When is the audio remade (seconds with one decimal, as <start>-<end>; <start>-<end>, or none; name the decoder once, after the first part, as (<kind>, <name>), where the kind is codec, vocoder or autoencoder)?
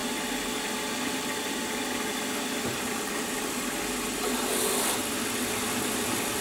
none